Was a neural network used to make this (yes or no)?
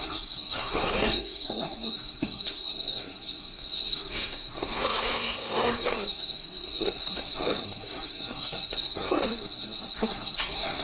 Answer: yes